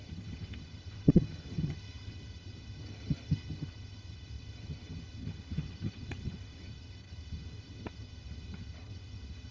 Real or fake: fake